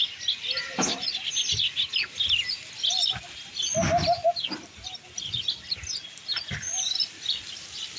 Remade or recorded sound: recorded